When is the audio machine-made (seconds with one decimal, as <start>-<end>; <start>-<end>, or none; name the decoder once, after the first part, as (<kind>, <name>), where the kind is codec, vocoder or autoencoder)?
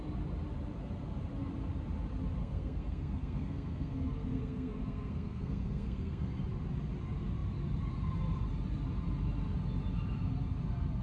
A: 2.4-6.3 (codec, SNAC)